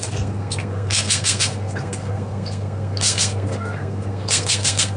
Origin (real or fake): fake